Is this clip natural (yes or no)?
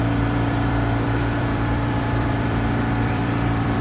no